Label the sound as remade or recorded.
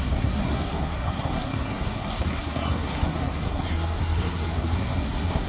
remade